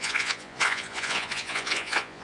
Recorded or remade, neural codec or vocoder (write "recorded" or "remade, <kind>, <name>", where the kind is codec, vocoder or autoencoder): remade, vocoder, Vocos